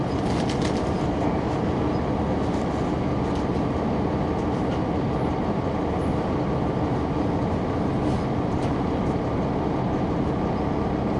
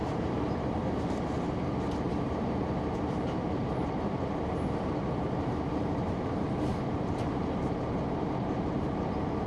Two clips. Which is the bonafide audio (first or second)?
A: first